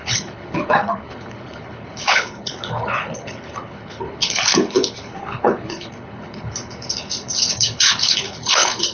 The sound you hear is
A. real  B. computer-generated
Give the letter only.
B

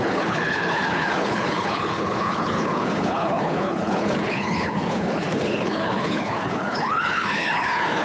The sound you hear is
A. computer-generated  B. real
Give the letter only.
A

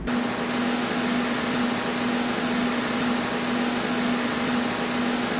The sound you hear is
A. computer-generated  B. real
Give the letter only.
B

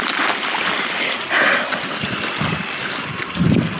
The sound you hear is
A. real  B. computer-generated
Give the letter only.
A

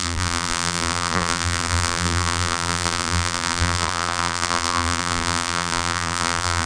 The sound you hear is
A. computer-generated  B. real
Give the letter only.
A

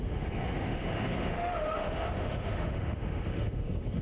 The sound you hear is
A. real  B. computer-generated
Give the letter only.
B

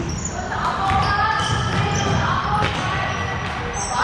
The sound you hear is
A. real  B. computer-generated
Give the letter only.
A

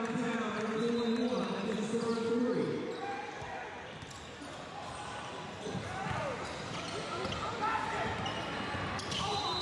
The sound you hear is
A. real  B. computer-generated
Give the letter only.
A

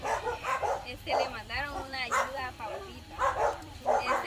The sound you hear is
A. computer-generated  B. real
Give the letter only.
A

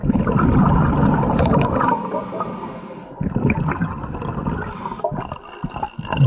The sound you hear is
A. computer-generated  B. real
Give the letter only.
B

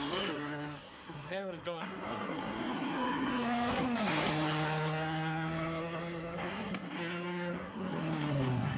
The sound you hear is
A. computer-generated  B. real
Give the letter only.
A